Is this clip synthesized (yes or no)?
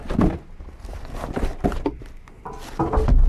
no